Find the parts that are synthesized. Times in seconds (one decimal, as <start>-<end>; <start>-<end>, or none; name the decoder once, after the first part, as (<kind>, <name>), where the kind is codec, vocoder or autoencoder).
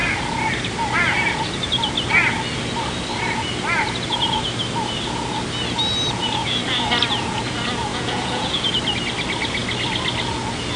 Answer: 7.9-8.7 (vocoder, Vocos)